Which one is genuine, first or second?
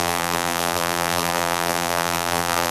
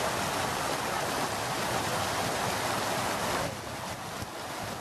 second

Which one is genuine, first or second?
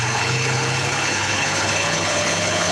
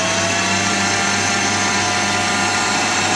second